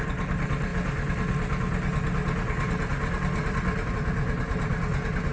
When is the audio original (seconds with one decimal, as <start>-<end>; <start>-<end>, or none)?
0.0-5.3